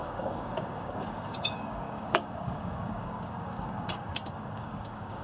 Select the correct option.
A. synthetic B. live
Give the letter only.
A